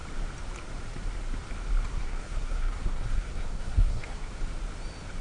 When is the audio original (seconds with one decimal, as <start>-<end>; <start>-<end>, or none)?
0.0-1.9; 4.3-5.2